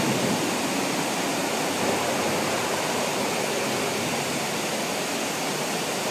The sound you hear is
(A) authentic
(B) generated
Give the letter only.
A